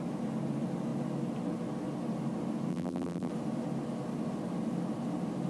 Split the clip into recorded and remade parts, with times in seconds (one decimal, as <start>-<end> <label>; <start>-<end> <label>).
0.0-2.7 recorded; 2.7-3.3 remade; 3.3-5.5 recorded